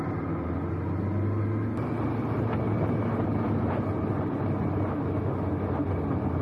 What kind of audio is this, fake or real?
real